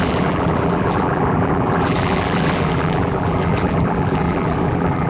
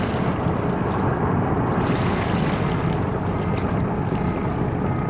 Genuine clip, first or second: second